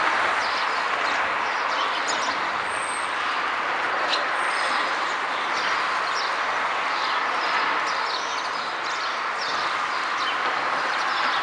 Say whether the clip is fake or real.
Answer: real